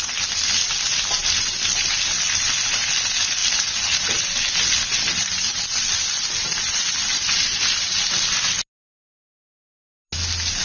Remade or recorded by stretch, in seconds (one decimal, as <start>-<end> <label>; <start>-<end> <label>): 0.0-10.6 recorded